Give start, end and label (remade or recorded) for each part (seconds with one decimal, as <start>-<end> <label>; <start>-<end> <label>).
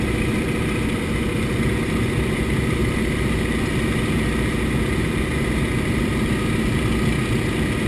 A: 0.0-2.8 remade; 2.8-5.0 recorded; 5.0-6.1 remade; 6.1-6.7 recorded; 6.7-7.9 remade